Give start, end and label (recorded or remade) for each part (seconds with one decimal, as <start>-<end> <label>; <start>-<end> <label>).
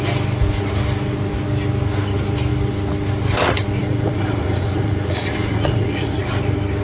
0.0-3.8 recorded; 3.8-6.2 remade; 6.2-6.8 recorded